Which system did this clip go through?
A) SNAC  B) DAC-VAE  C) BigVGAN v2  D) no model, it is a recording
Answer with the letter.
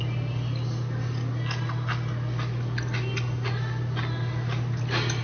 D